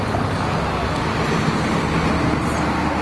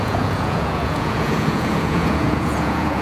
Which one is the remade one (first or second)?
second